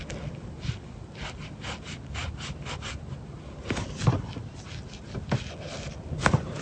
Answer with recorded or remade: recorded